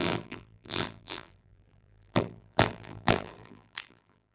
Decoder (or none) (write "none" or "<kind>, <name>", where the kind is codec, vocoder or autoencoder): vocoder, BigVGAN v2